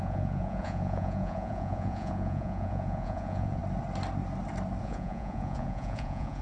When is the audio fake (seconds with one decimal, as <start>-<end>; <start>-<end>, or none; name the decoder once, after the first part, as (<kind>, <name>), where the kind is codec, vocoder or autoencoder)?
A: 0.0-3.6 (vocoder, Vocos); 4.8-6.4